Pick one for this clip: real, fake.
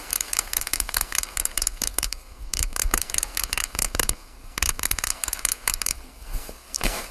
fake